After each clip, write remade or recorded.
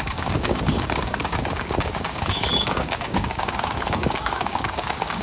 remade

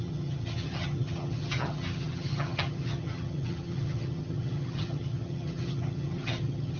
remade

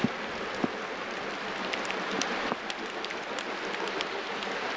recorded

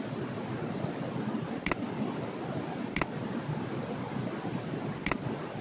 recorded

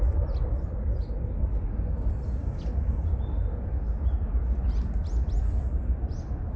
recorded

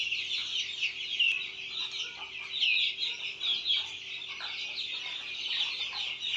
recorded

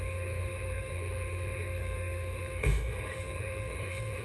remade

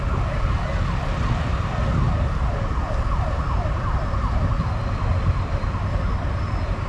recorded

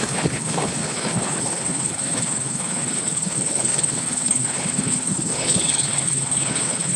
remade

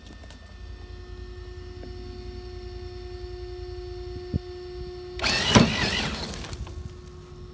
recorded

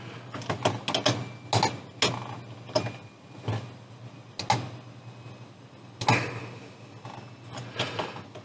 recorded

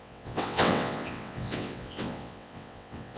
remade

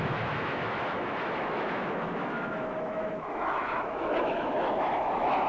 remade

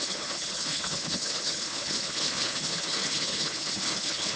remade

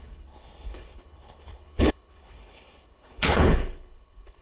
remade